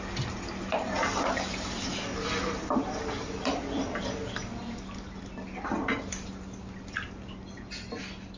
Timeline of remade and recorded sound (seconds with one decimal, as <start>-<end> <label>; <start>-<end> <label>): 0.0-8.4 recorded